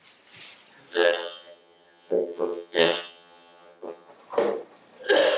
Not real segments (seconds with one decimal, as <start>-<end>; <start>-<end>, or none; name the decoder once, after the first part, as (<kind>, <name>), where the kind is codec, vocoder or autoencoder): 0.9-4.1 (vocoder, HiFi-GAN)